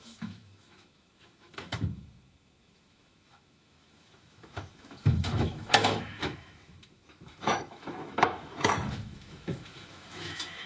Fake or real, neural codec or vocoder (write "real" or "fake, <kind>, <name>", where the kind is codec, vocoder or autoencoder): fake, autoencoder, DAC-VAE